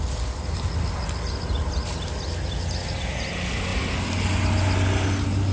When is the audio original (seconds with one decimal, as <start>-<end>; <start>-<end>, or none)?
0.0-5.5